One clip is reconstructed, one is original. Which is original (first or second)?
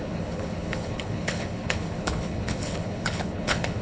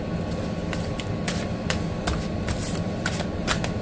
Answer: second